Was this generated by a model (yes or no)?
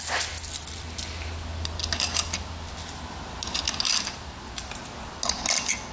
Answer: no